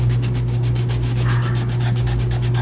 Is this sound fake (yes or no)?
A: yes